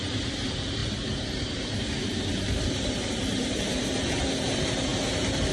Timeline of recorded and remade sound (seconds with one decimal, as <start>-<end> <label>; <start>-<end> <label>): 0.0-4.9 remade; 4.9-5.5 recorded